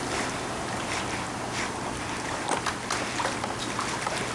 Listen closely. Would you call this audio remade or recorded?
recorded